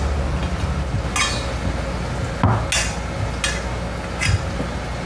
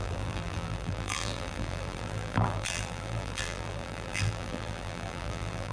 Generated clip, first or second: second